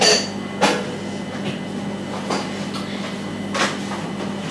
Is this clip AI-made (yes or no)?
no